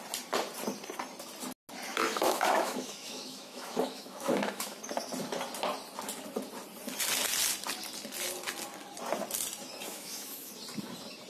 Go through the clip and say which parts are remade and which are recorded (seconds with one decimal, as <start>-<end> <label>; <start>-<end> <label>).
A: 0.0-1.9 recorded; 1.9-4.8 remade; 4.8-9.9 recorded; 9.9-10.5 remade; 10.5-11.3 recorded